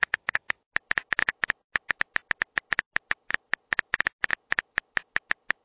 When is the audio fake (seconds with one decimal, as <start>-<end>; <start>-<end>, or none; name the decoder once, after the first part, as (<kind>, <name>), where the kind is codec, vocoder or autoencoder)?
0.0-0.6 (autoencoder, DAC-VAE)